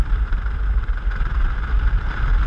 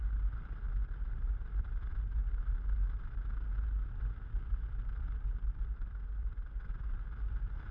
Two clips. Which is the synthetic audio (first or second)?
first